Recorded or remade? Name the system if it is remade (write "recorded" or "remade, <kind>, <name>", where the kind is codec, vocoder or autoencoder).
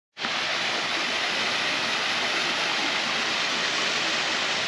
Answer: recorded